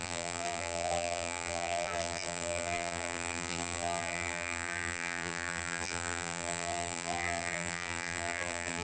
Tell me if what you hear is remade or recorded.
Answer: remade